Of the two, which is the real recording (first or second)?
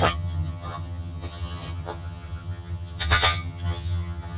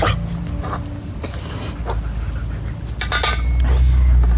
second